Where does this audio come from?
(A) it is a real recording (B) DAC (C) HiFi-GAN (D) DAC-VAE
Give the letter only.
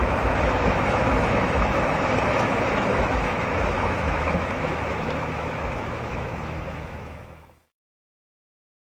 D